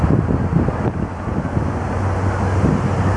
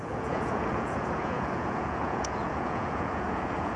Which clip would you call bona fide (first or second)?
first